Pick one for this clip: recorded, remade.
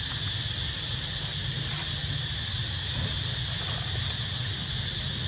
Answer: recorded